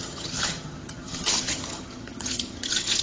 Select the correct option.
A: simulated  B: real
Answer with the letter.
A